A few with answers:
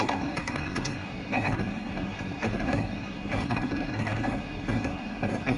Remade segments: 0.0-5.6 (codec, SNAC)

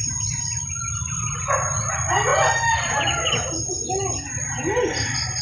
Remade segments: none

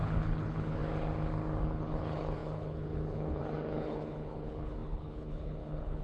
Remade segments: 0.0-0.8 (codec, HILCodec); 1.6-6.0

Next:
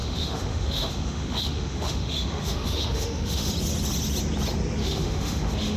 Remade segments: 0.0-3.5 (autoencoder, DAC-VAE); 4.8-5.8

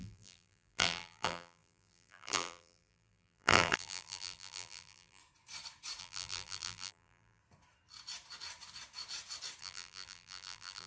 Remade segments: 0.0-5.2 (vocoder, BigVGAN v2); 6.0-7.4; 9.6-10.9

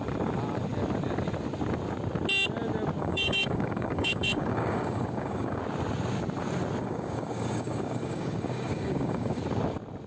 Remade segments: 3.0-5.6 (codec, DAC); 6.8-9.4